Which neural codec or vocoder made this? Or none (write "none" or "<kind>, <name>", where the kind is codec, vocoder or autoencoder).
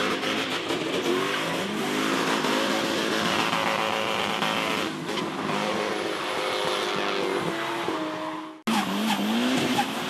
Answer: none